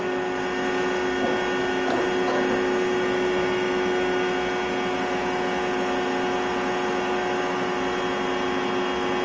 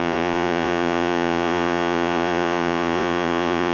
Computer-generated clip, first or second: second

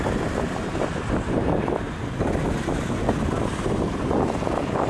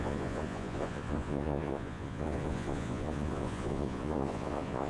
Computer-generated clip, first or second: second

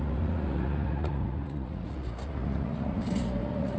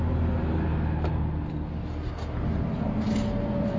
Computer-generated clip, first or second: first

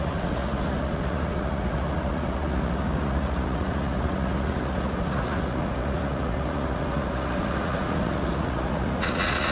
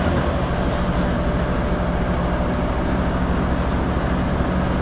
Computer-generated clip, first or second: first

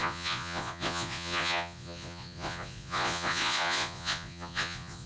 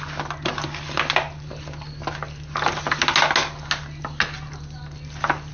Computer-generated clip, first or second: first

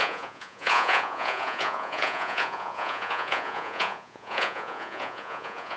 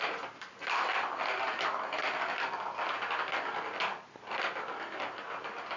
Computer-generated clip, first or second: first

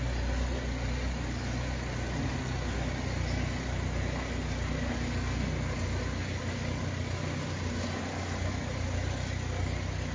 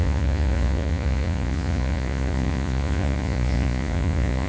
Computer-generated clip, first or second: second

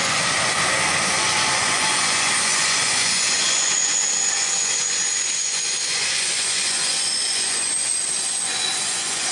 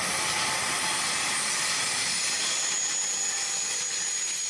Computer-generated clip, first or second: first